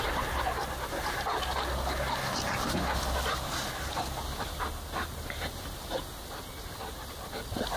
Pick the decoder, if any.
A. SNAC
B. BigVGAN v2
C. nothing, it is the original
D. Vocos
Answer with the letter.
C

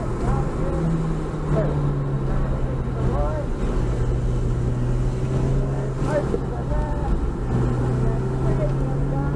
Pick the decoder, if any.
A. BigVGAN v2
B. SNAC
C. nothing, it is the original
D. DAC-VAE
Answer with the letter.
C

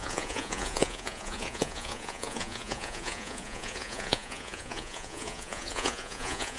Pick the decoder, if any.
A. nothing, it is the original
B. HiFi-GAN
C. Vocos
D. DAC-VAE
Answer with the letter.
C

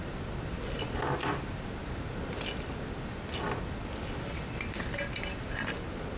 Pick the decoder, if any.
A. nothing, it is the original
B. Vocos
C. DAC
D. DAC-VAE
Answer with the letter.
A